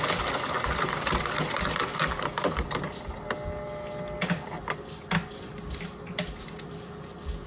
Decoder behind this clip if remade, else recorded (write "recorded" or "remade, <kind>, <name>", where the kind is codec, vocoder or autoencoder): recorded